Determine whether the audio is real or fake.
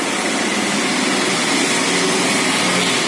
real